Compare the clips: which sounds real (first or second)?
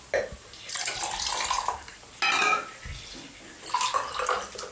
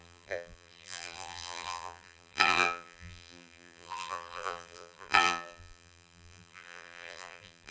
first